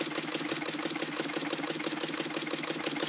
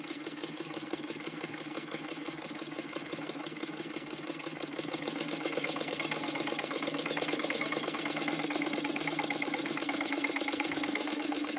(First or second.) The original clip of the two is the first